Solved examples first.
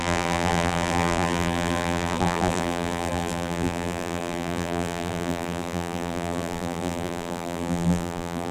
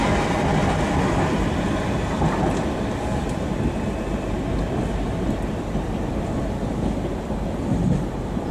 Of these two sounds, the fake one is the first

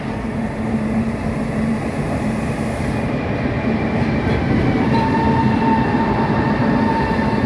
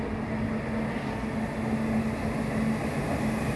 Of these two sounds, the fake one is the first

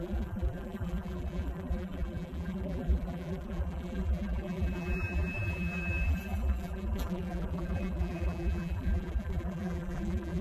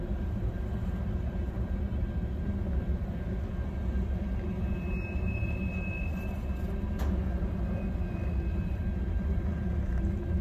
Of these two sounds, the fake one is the first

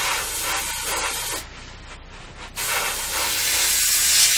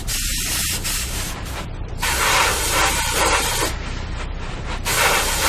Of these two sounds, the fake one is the second